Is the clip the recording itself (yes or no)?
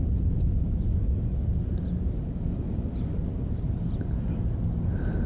yes